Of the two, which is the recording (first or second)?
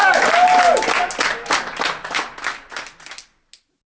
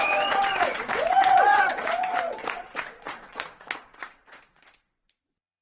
first